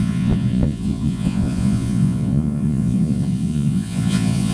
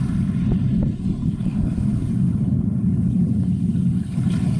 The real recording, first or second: second